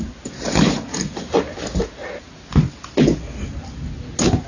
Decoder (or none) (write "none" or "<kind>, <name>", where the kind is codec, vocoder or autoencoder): none